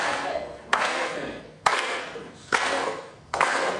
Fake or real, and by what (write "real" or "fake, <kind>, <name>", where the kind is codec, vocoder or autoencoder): fake, codec, SNAC